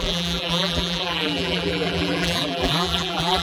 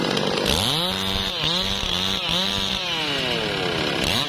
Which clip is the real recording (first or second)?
second